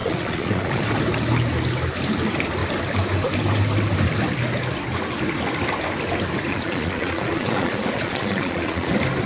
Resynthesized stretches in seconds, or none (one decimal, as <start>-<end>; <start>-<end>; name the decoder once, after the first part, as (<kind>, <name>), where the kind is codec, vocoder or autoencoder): 0.0-0.8 (vocoder, Vocos); 6.5-8.9